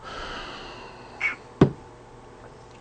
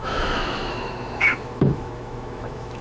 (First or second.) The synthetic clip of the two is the second